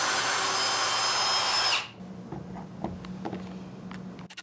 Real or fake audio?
real